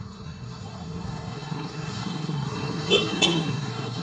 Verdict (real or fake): fake